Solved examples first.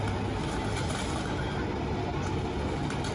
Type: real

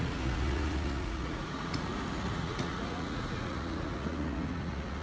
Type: fake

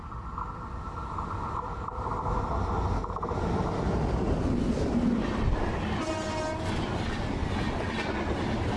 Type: real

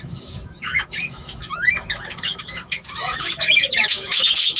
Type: fake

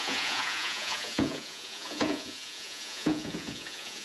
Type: fake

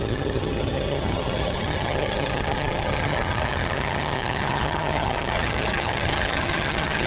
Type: fake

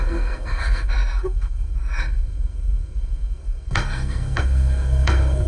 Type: fake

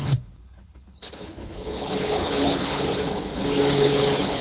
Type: fake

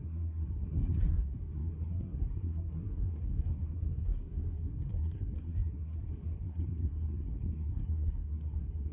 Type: fake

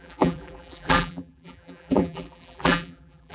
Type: fake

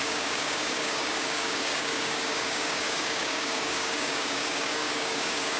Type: fake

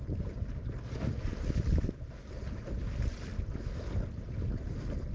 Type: real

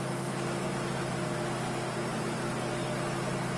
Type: real